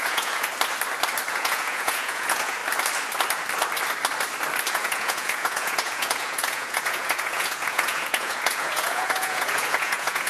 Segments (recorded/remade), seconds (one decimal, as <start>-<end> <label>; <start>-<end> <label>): 0.0-0.5 remade; 0.5-1.3 recorded; 1.3-2.6 remade; 2.6-4.7 recorded; 4.7-10.3 remade